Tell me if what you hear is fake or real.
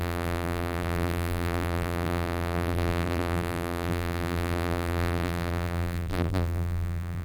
fake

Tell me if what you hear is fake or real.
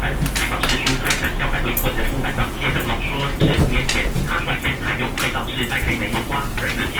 real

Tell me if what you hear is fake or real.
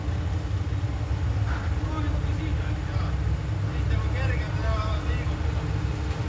real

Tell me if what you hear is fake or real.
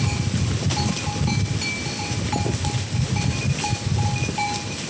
real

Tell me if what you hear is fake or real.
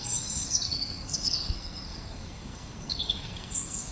fake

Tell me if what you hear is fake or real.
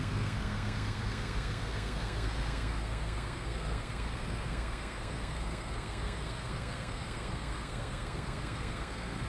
fake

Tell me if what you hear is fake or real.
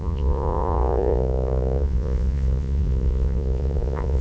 fake